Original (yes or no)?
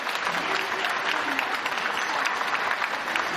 yes